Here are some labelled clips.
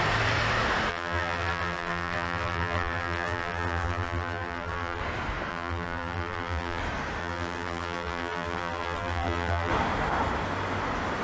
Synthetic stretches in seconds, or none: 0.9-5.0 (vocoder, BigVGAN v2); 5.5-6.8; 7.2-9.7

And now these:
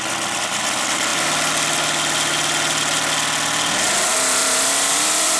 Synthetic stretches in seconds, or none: 4.4-5.4 (vocoder, BigVGAN v2)

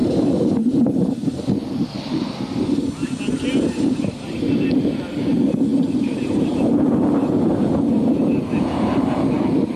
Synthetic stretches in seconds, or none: 0.0-1.4 (vocoder, BigVGAN v2); 3.3-4.6; 5.7-8.2

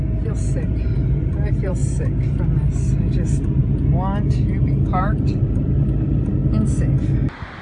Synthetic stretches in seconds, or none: 0.0-1.8 (vocoder, BigVGAN v2); 3.1-3.6; 4.9-6.4